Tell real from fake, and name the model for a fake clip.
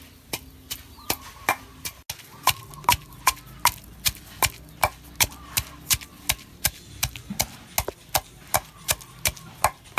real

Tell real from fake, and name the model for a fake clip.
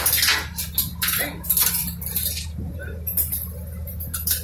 real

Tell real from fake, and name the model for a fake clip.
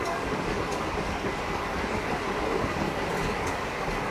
fake, codec, DAC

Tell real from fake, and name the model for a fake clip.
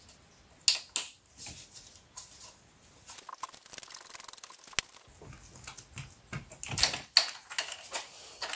real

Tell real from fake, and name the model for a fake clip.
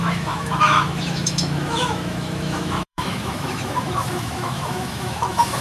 fake, autoencoder, DAC-VAE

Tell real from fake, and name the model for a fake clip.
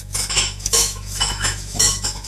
fake, autoencoder, DAC-VAE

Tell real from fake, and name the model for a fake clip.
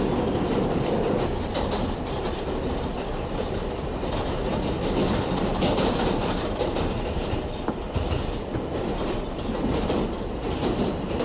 fake, vocoder, BigVGAN v2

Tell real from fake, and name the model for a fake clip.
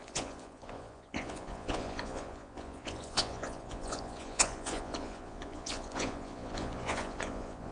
fake, vocoder, Vocos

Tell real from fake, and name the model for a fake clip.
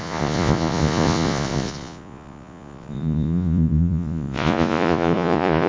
fake, vocoder, Vocos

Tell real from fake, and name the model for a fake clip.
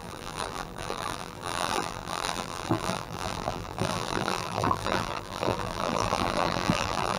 fake, vocoder, BigVGAN v2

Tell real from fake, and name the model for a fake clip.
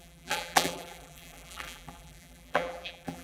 fake, vocoder, BigVGAN v2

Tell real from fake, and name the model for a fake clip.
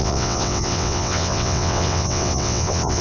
fake, vocoder, WaveNeXt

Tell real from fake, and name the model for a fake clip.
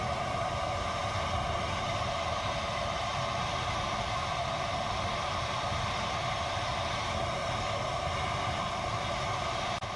real